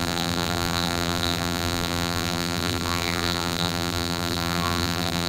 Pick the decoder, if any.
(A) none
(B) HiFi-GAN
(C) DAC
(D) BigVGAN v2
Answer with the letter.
D